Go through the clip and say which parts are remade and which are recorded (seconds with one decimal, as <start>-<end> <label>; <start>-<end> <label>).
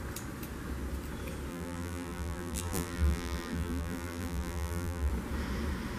0.0-1.5 recorded; 1.5-5.1 remade; 5.1-6.0 recorded